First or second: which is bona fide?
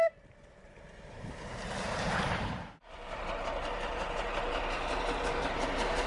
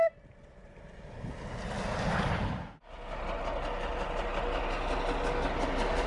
second